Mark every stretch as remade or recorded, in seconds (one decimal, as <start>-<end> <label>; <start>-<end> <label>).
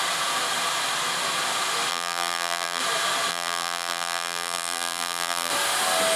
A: 0.0-1.9 recorded; 1.9-2.8 remade; 2.8-3.3 recorded; 3.3-5.5 remade; 5.5-6.2 recorded